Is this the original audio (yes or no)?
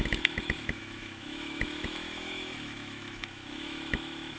no